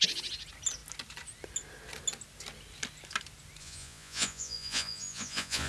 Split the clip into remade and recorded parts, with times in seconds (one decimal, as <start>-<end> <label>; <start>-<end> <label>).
0.0-3.6 recorded; 3.6-5.7 remade